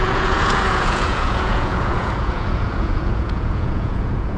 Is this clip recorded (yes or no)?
no